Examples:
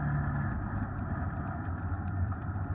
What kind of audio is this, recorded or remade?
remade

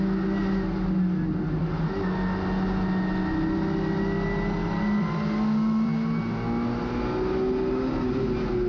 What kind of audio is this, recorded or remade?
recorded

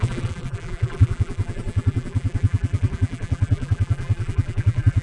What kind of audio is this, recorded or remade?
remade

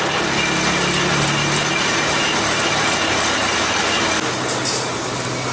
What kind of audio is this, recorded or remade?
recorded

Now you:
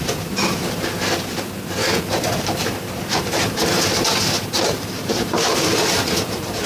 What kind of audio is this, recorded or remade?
remade